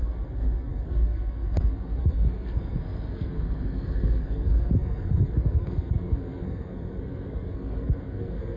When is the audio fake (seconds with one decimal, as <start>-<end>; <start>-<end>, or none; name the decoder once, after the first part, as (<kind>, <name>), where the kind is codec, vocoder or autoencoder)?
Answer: 0.0-8.6 (codec, SNAC)